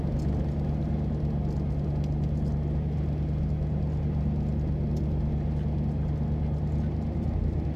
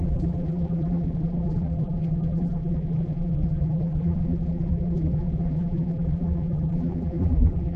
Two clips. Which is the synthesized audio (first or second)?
second